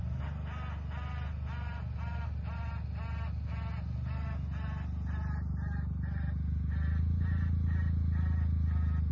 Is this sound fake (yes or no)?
no